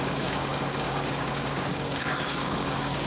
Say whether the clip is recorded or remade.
remade